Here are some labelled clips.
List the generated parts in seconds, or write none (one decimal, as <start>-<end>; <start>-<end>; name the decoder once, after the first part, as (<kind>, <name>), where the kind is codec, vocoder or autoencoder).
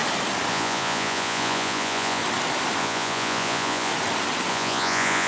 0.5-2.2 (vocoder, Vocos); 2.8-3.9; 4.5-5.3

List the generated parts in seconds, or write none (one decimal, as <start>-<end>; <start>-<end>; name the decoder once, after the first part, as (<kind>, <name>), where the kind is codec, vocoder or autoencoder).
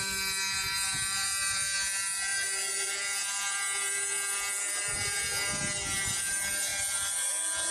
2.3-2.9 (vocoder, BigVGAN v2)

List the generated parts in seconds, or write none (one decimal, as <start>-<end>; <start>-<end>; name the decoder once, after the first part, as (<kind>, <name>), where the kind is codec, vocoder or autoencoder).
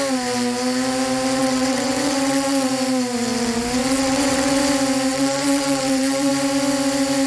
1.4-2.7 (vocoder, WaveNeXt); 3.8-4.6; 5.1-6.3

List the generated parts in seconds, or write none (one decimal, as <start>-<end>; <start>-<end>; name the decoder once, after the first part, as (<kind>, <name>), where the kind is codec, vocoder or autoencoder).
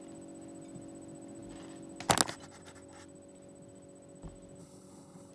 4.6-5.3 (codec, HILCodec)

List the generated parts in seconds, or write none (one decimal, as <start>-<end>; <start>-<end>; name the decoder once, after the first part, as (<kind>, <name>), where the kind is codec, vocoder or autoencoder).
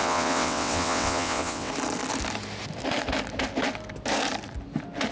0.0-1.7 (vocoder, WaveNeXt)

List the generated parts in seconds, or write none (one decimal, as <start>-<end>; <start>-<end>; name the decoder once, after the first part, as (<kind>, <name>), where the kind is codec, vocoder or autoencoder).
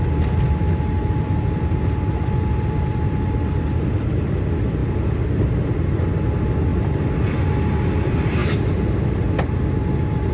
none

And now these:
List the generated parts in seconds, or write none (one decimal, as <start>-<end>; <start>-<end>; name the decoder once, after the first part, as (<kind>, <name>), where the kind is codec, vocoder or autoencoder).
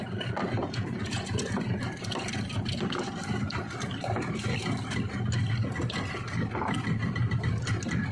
0.6-1.5 (vocoder, Vocos)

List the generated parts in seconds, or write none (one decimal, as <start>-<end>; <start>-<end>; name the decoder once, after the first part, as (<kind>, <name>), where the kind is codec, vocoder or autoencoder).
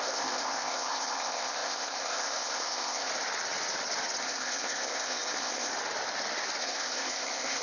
0.0-3.1 (codec, ZipCodec); 4.2-5.7; 6.6-7.6